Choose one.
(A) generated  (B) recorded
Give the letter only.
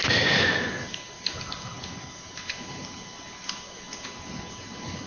B